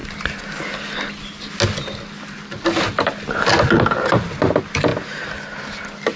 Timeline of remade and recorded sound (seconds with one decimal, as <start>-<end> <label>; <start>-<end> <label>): 0.0-6.2 recorded